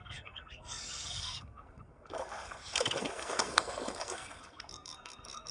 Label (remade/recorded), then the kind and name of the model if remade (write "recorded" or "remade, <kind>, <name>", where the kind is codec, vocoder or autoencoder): remade, codec, SNAC